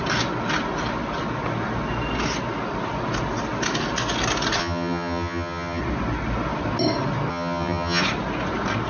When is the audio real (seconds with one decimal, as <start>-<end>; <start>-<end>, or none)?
0.0-4.6; 5.8-7.3; 8.0-8.9